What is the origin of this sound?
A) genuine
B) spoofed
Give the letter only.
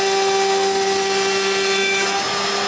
A